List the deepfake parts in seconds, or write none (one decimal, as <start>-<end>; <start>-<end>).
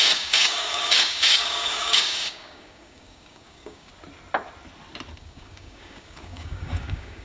0.0-3.9; 5.2-7.2